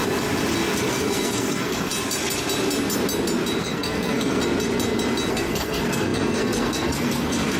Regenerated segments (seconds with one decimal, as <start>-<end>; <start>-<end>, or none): 0.9-1.9; 3.6-4.4; 5.3-7.6